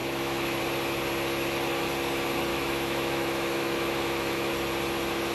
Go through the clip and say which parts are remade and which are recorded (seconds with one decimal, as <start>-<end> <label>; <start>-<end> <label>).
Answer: 0.0-0.6 remade; 0.6-2.5 recorded; 2.5-4.5 remade; 4.5-5.3 recorded